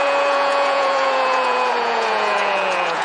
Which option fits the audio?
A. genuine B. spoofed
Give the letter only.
B